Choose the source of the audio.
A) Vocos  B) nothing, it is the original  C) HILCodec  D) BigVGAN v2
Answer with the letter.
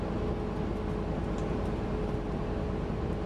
B